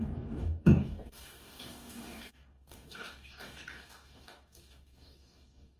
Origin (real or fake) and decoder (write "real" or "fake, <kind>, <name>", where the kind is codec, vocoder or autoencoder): fake, codec, DAC